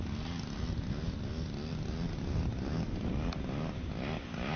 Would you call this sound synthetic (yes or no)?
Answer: no